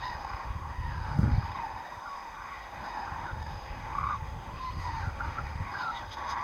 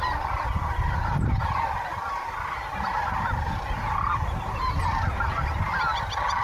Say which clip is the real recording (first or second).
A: second